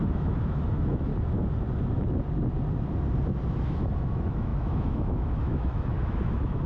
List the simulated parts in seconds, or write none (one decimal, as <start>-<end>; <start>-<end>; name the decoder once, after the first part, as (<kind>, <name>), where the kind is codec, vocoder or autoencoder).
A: 0.0-1.1 (autoencoder, DAC-VAE); 3.5-6.7